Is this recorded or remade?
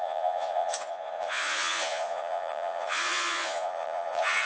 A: remade